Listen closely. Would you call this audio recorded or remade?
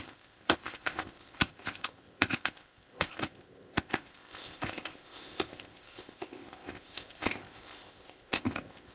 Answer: remade